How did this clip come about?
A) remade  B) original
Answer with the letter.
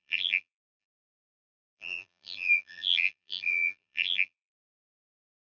A